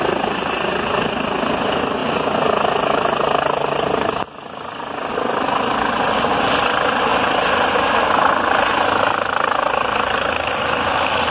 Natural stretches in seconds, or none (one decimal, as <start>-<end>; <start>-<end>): 0.0-11.3

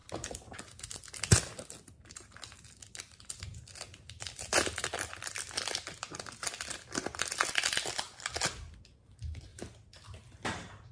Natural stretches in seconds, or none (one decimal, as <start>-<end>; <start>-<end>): 0.0-10.9